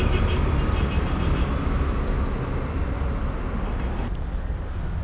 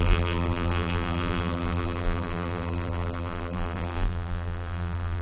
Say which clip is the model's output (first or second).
second